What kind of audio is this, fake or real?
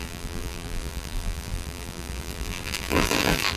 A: fake